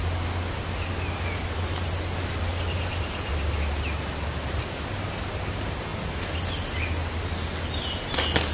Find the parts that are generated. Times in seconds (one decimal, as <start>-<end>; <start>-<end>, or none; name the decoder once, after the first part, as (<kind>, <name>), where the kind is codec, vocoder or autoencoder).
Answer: none